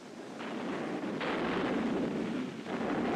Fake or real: real